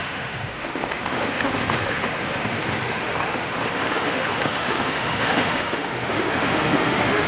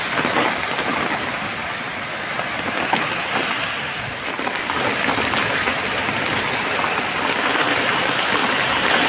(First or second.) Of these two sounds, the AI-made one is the first